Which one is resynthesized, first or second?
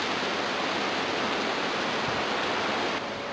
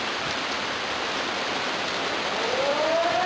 second